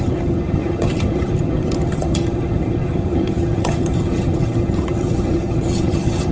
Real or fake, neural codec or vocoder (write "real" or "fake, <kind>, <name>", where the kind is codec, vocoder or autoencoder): fake, vocoder, HiFi-GAN